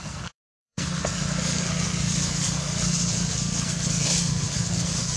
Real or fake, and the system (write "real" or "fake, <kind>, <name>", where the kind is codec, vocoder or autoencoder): fake, codec, SNAC